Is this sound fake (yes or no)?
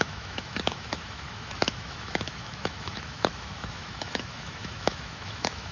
yes